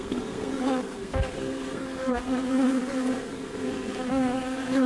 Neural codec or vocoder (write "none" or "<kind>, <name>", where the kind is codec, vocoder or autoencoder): codec, SNAC